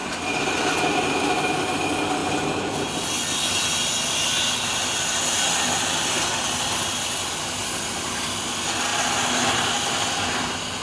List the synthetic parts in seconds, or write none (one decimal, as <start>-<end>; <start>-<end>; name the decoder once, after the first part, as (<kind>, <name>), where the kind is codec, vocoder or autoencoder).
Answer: none